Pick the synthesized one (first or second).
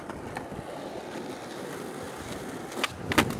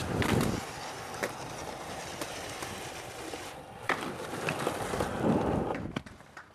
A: second